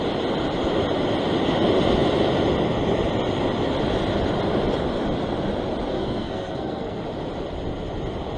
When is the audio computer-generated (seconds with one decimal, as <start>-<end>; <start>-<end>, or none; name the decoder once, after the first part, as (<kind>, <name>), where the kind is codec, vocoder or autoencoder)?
5.9-7.0 (codec, SNAC)